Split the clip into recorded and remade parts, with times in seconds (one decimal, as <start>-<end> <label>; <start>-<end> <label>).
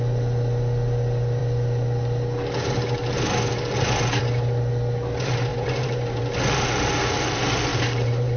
0.0-5.5 recorded; 5.5-6.2 remade; 6.2-7.7 recorded; 7.7-8.4 remade